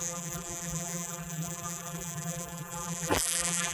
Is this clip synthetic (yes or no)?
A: yes